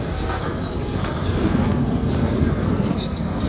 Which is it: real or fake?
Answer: fake